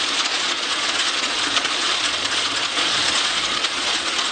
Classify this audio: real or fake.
fake